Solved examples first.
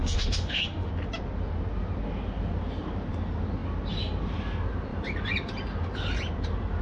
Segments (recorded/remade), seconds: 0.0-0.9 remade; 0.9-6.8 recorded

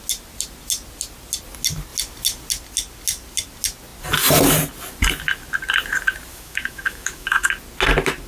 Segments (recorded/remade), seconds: 0.0-6.3 recorded; 6.3-7.5 remade; 7.5-8.3 recorded

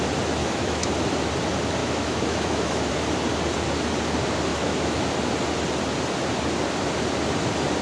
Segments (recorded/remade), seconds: 0.0-0.4 recorded; 0.4-0.9 remade; 0.9-1.8 recorded; 1.8-2.9 remade; 2.9-4.5 recorded; 4.5-5.0 remade; 5.0-7.8 recorded

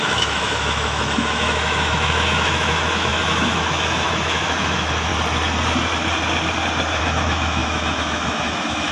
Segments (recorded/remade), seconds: 0.0-5.1 remade; 5.1-7.0 recorded; 7.0-8.9 remade

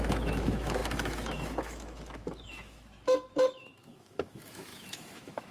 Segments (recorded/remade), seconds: 0.0-5.5 remade

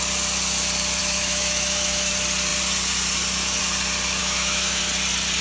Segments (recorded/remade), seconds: 0.0-1.0 recorded; 1.0-2.1 remade; 2.1-4.2 recorded; 4.2-4.8 remade; 4.8-5.4 recorded

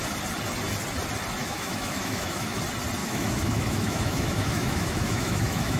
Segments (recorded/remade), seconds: 0.0-1.4 recorded; 1.4-2.6 remade; 2.6-3.0 recorded; 3.0-5.8 remade

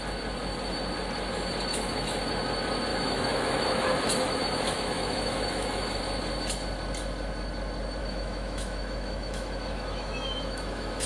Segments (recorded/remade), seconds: 0.0-1.7 recorded; 1.7-2.3 remade; 2.3-2.9 recorded; 2.9-6.0 remade; 6.0-8.0 recorded; 8.0-11.1 remade